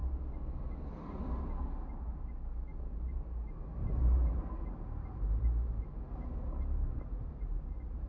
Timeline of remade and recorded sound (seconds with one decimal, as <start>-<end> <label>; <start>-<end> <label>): 0.0-2.7 recorded; 2.7-5.8 remade; 5.8-7.1 recorded; 7.1-8.1 remade

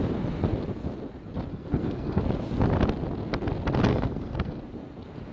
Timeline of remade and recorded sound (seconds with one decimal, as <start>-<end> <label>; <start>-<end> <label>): 0.0-1.5 recorded; 1.5-2.2 remade; 2.2-3.9 recorded; 3.9-4.6 remade; 4.6-5.3 recorded

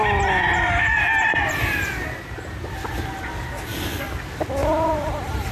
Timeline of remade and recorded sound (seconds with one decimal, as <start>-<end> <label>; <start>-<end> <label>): 0.0-4.6 recorded; 4.6-5.5 remade

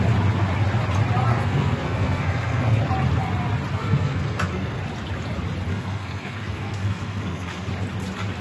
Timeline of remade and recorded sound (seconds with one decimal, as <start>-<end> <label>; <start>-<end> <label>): 0.0-1.3 recorded; 1.3-2.8 remade; 2.8-3.7 recorded; 3.7-4.8 remade; 4.8-5.7 recorded; 5.7-7.7 remade; 7.7-8.4 recorded

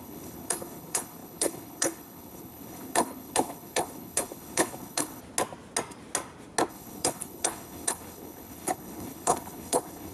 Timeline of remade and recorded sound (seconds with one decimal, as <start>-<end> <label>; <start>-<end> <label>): 0.0-5.2 remade; 5.2-6.7 recorded; 6.7-10.1 remade

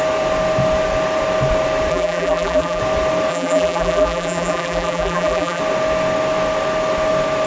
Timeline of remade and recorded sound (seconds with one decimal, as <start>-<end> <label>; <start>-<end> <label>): 0.0-1.9 recorded; 1.9-2.8 remade; 2.8-3.3 recorded; 3.3-5.6 remade; 5.6-7.5 recorded

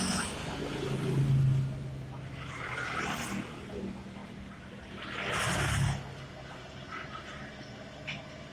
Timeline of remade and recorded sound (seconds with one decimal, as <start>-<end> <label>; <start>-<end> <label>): 0.0-8.5 recorded

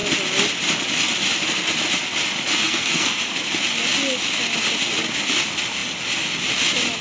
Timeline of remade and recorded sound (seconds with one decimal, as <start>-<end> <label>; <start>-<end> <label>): 0.0-2.6 recorded; 2.6-3.2 remade; 3.2-7.0 recorded